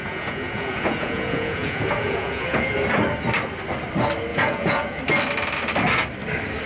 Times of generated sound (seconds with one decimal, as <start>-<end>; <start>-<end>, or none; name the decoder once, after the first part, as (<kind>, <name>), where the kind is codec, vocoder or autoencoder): 0.0-2.7 (vocoder, Vocos); 4.3-5.0